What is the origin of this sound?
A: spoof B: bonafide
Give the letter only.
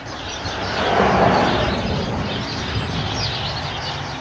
B